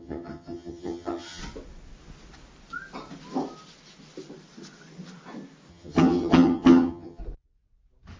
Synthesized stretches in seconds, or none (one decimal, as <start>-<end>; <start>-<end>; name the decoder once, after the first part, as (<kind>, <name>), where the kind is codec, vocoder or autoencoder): 0.0-1.4 (vocoder, HiFi-GAN); 5.7-7.2